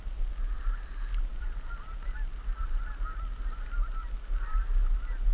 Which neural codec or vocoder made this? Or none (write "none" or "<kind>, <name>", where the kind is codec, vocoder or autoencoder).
none